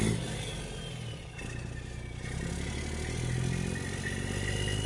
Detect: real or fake real